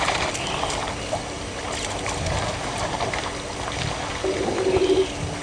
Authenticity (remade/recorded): recorded